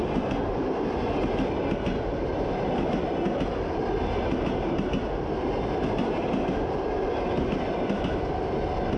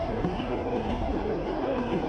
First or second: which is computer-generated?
second